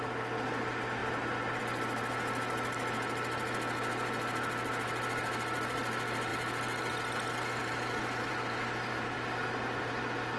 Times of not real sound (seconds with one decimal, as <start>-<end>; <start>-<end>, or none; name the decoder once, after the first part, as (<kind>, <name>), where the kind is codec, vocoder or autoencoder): none